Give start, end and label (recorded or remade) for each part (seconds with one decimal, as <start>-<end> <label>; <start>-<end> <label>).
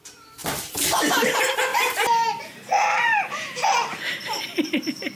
0.0-0.4 recorded; 0.4-1.0 remade; 1.0-1.7 recorded; 1.7-4.8 remade; 4.8-5.2 recorded